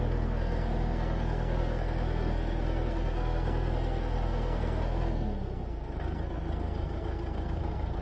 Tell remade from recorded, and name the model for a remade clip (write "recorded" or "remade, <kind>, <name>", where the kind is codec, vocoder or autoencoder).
remade, codec, SNAC